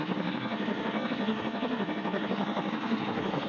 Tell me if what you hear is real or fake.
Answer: fake